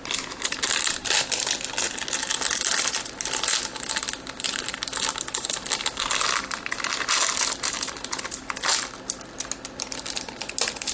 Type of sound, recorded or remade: recorded